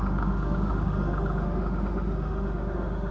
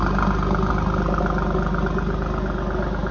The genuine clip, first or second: second